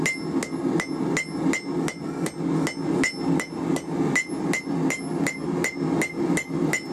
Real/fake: real